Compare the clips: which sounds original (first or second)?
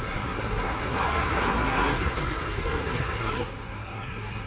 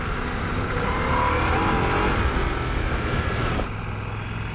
second